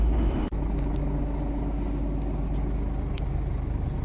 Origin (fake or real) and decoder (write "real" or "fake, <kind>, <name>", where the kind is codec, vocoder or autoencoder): real